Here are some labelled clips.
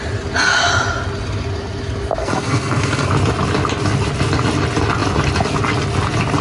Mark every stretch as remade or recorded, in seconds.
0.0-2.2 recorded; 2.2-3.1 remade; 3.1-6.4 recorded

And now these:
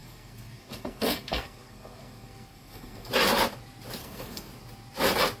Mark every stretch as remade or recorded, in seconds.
0.0-3.1 remade; 3.1-4.0 recorded; 4.0-4.5 remade; 4.5-5.4 recorded

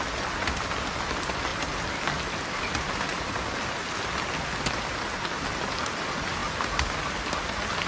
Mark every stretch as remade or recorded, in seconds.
0.0-7.9 recorded

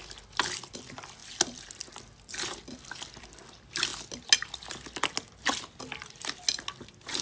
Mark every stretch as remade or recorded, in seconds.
0.0-7.2 recorded

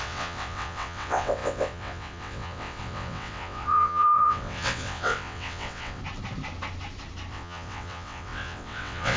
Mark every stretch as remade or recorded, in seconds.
0.0-6.0 remade; 6.0-7.3 recorded; 7.3-9.2 remade

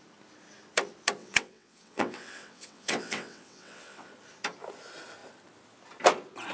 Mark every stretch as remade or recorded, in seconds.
0.0-1.2 recorded; 1.2-4.1 remade; 4.1-6.5 recorded